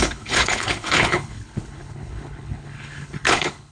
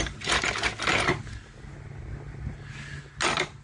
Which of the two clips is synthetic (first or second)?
first